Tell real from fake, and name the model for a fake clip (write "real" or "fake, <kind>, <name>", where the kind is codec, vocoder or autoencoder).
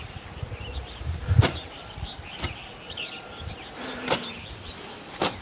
real